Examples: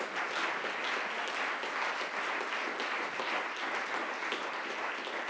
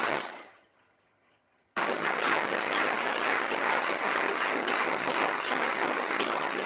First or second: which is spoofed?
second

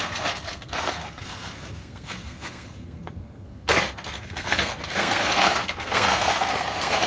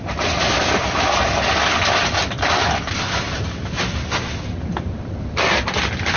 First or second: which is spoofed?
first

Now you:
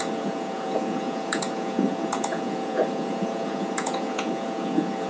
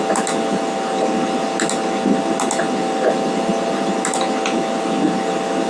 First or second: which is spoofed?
first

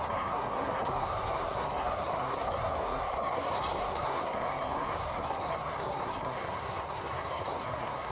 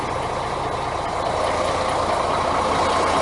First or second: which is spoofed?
first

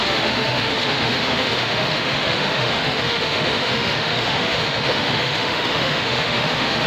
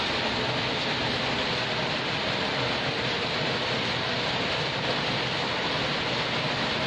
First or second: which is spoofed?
first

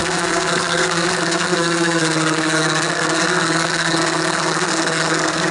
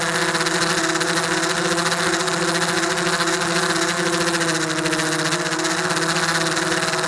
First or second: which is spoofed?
first